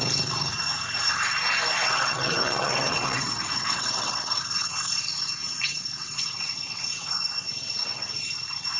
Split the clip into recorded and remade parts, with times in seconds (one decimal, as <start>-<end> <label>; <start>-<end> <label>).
0.0-1.8 recorded; 1.8-4.4 remade; 4.4-5.4 recorded; 5.4-7.1 remade; 7.1-7.5 recorded; 7.5-8.2 remade; 8.2-8.8 recorded